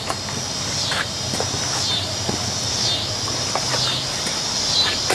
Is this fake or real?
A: fake